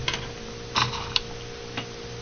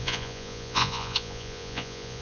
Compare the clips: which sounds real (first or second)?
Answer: first